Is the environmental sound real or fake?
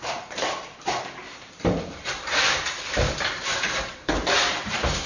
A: fake